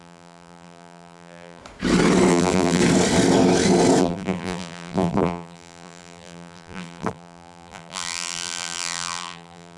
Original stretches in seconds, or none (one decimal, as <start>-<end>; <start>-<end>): 1.6-2.3; 2.8-4.0